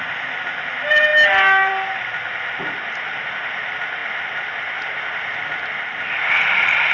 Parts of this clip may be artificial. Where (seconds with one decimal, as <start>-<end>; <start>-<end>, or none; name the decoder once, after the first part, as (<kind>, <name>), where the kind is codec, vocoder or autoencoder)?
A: none